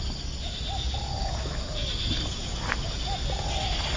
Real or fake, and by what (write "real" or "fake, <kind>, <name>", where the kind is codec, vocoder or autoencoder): real